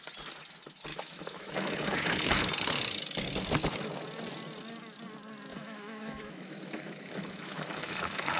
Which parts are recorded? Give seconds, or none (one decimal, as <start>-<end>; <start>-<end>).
0.0-0.9; 2.3-5.5